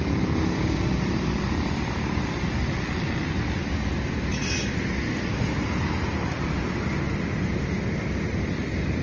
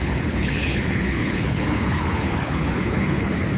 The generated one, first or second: second